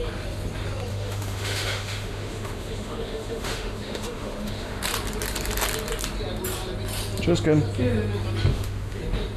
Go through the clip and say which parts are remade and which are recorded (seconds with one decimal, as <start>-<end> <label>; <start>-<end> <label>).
0.0-0.9 recorded; 0.9-4.8 remade; 4.8-8.5 recorded; 8.5-9.0 remade; 9.0-9.4 recorded